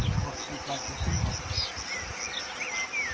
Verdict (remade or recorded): recorded